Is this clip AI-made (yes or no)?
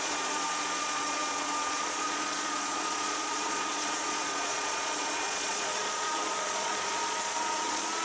yes